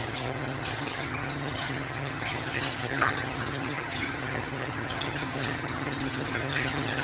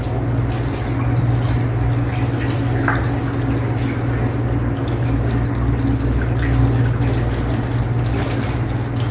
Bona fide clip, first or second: second